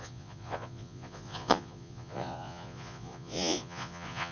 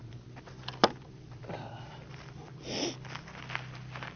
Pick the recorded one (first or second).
second